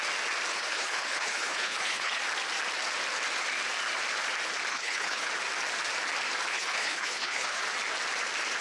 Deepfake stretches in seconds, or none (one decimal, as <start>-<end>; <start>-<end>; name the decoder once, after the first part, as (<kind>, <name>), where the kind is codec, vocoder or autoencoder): 0.5-2.2 (codec, HILCodec); 4.7-5.3; 6.5-7.6